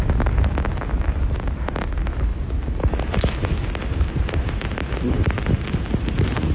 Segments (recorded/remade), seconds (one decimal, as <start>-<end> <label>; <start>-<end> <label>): 0.0-6.5 remade